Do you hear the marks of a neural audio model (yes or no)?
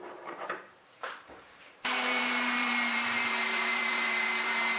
yes